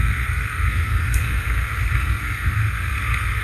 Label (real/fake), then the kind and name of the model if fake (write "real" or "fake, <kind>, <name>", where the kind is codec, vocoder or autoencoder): fake, codec, SNAC